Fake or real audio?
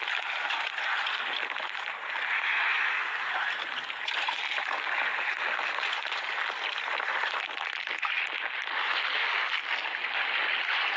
real